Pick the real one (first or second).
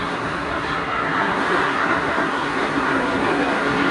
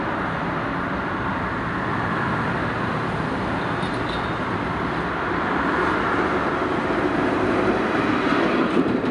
second